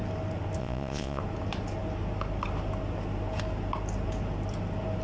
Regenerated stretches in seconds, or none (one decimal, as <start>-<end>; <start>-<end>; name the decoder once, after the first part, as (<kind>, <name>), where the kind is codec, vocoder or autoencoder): 0.6-1.2 (vocoder, Vocos)